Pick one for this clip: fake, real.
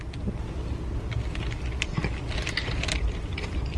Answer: real